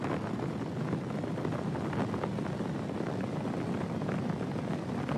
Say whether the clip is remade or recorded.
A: recorded